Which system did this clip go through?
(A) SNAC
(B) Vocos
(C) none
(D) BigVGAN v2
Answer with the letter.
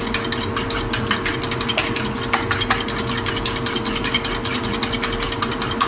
C